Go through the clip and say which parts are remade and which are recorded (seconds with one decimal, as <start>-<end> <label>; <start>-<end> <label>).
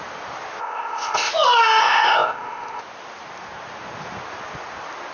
0.0-0.6 recorded; 0.6-1.3 remade; 1.3-1.8 recorded; 1.8-2.8 remade; 2.8-5.1 recorded